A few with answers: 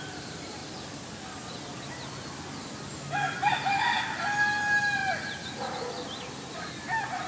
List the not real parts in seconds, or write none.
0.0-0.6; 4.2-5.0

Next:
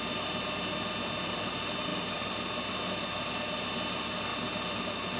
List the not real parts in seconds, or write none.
none

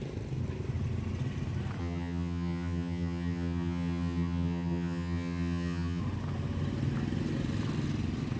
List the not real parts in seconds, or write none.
1.8-6.0

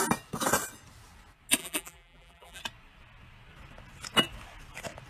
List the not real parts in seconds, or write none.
1.6-2.6

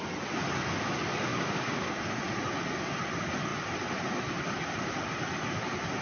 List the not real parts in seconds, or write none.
1.3-2.1

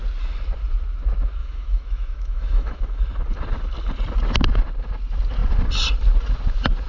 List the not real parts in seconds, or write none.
1.4-3.0